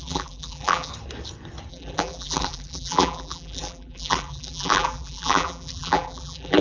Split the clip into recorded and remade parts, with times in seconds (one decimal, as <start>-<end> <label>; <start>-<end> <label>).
0.0-0.9 remade; 0.9-1.7 recorded; 1.7-6.6 remade